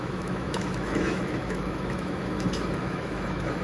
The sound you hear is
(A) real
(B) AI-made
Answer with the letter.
B